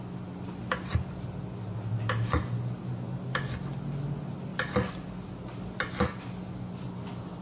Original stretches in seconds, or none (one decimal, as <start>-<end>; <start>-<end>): 0.0-7.4